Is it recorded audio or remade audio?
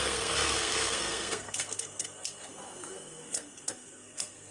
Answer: remade